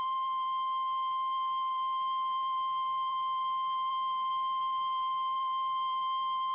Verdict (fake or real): fake